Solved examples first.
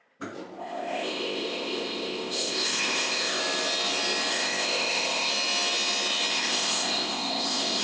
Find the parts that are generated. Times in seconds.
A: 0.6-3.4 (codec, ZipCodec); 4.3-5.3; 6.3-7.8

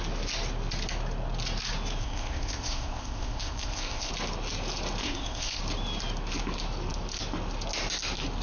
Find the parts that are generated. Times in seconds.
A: 2.0-4.1 (codec, ZipCodec); 5.0-5.6

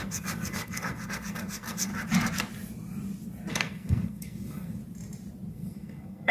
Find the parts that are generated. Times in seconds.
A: 0.0-1.9 (codec, SNAC); 3.5-4.8; 5.5-6.3

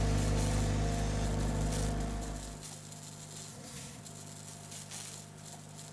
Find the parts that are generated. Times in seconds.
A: 3.5-4.0 (codec, SNAC)

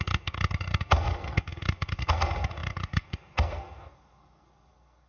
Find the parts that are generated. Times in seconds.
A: 0.0-5.1 (codec, SNAC)

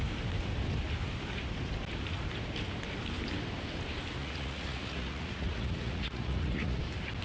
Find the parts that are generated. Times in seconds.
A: 4.2-6.8 (vocoder, Vocos)

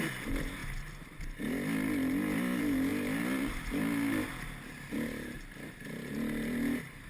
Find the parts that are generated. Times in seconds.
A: none

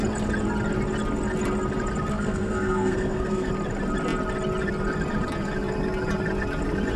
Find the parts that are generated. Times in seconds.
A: 2.1-3.5 (codec, SNAC)